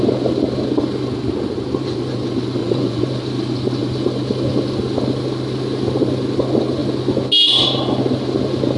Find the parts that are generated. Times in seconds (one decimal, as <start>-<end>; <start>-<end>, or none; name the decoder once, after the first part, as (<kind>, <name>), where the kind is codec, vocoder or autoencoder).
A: 2.6-3.1 (vocoder, Vocos)